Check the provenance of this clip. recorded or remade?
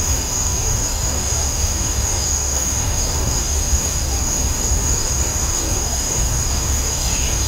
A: remade